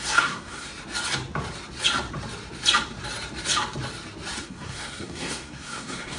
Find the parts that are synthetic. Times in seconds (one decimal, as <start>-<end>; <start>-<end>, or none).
0.0-0.7; 4.4-6.2